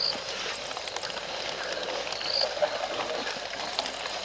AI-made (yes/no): no